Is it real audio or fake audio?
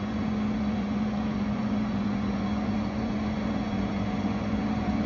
fake